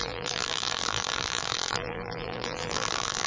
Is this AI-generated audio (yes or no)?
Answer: yes